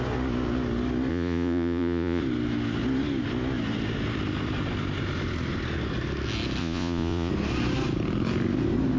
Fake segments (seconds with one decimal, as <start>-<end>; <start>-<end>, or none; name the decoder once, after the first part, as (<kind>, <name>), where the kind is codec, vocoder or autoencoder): 1.1-2.2 (vocoder, Vocos); 6.6-7.3